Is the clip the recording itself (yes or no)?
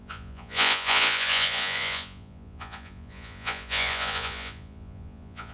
no